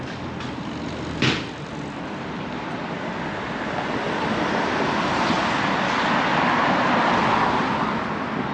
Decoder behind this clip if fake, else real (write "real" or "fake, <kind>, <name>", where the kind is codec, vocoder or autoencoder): real